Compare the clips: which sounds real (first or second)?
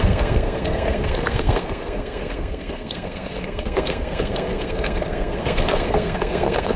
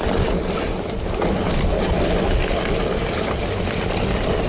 second